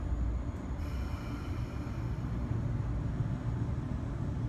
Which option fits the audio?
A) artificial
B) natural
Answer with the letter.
B